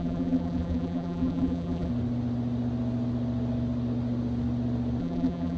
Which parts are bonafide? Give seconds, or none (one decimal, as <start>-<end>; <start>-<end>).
1.9-5.0